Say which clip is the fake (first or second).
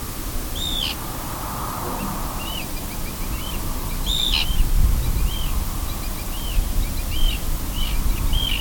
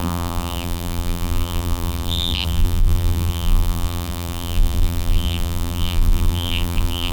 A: second